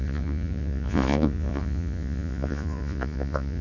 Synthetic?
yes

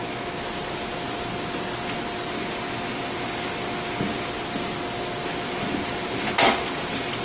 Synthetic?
no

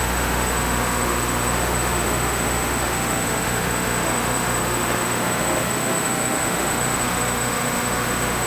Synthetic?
yes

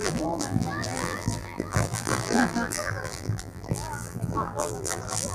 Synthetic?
yes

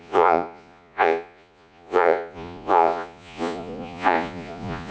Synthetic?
yes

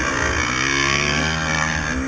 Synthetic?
no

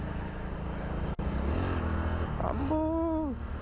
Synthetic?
no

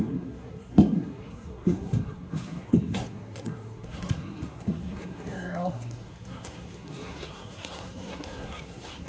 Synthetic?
yes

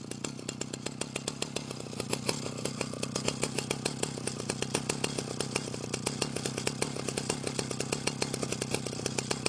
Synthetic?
no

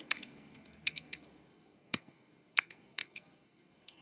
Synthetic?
yes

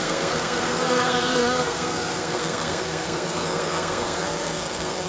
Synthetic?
yes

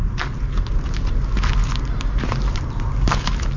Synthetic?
no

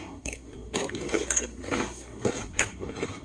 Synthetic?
yes